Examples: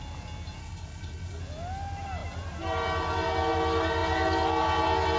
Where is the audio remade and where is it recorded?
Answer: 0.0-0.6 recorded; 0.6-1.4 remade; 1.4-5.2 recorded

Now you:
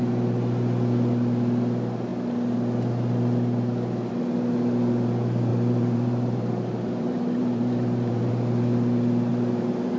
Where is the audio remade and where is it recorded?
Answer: 0.0-5.5 recorded; 5.5-8.3 remade; 8.3-9.3 recorded; 9.3-10.0 remade

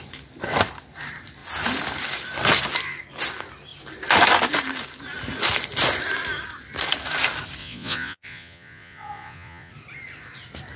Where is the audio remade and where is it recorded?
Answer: 0.0-7.6 recorded; 7.6-9.7 remade; 9.7-10.8 recorded

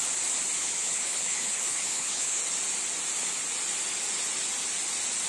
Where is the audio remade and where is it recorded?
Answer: 0.0-0.6 recorded; 0.6-2.4 remade; 2.4-5.3 recorded

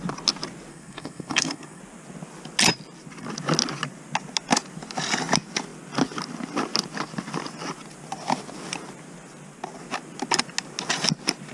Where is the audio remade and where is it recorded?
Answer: 0.0-0.7 recorded; 0.7-1.8 remade; 1.8-11.5 recorded

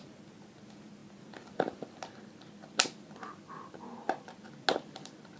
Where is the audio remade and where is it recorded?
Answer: 0.0-5.4 recorded